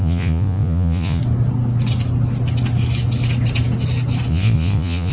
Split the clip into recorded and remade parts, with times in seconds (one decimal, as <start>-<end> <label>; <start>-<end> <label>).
0.0-1.2 remade; 1.2-4.3 recorded; 4.3-5.1 remade